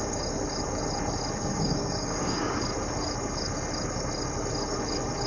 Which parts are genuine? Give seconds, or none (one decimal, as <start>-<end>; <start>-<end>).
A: 0.0-1.5; 2.6-5.3